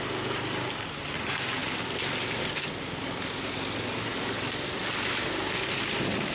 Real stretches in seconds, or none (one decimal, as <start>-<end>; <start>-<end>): 0.0-6.3